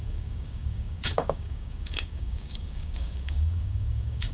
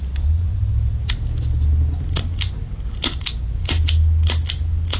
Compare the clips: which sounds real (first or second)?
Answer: second